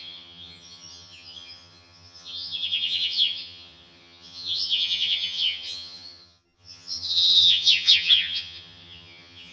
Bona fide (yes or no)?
no